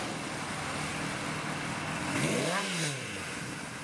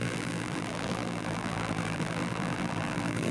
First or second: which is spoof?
second